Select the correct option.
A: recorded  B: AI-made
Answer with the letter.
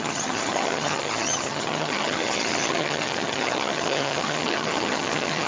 B